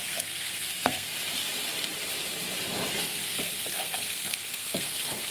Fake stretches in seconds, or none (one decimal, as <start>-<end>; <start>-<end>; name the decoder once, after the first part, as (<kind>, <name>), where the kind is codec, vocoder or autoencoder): 0.0-1.1 (codec, SNAC); 3.0-5.3